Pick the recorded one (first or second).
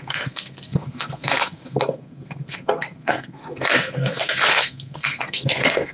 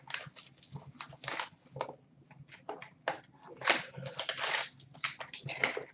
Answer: second